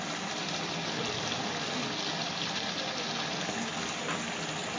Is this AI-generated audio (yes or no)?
no